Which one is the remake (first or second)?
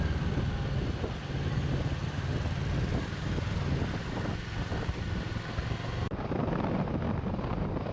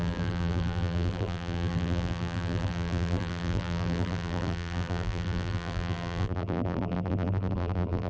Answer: second